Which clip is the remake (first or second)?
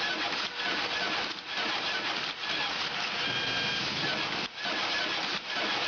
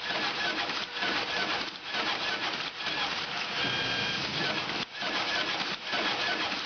second